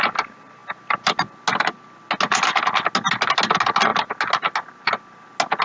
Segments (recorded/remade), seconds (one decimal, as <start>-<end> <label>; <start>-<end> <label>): 0.0-5.6 recorded